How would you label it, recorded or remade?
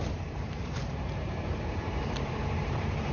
remade